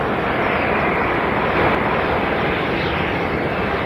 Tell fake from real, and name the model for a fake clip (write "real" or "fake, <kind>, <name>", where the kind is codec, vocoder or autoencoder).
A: real